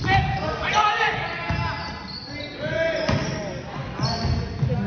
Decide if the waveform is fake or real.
real